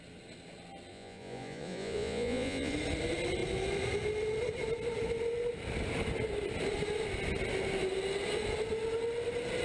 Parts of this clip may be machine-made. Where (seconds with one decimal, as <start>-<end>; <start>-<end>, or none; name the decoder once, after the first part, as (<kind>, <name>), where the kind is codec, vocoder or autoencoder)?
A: 0.9-2.7 (vocoder, Vocos)